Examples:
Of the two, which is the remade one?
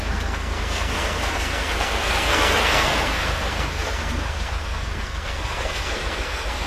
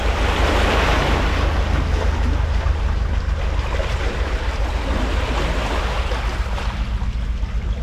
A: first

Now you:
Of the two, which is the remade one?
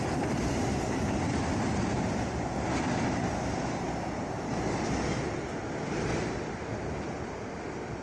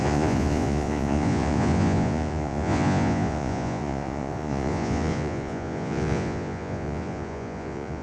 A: second